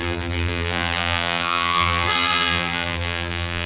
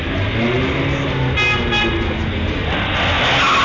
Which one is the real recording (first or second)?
second